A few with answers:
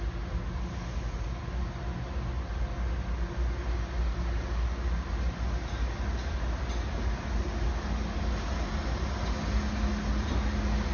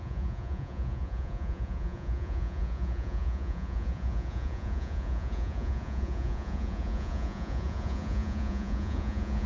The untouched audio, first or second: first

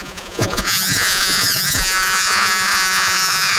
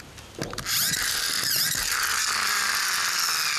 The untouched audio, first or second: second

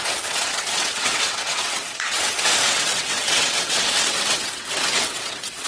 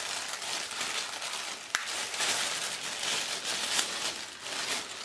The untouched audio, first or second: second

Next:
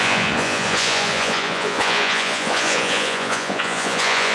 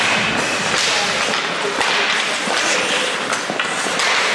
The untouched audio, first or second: second